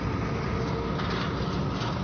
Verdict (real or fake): real